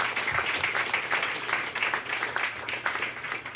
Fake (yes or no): no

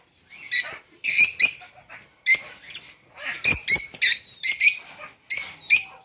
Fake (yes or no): no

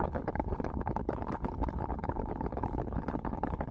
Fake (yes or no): yes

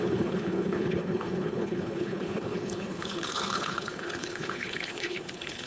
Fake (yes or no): yes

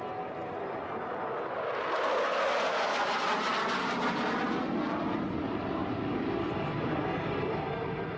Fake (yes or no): no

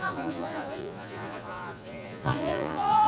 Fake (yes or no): yes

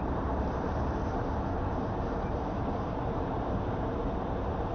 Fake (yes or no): yes